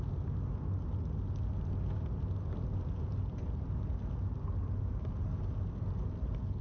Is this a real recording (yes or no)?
yes